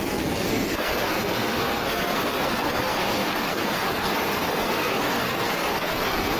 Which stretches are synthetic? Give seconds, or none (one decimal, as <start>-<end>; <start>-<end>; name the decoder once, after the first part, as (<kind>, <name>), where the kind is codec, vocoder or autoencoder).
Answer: 0.0-6.4 (codec, SNAC)